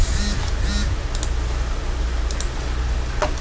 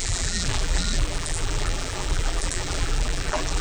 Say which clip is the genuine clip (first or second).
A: first